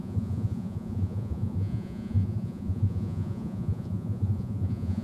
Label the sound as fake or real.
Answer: fake